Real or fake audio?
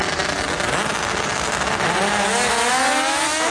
real